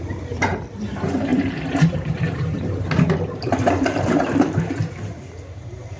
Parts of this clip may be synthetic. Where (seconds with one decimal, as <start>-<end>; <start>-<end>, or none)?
0.0-6.0